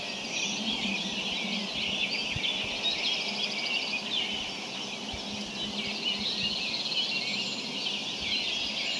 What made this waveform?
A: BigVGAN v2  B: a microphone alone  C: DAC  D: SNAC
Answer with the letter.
B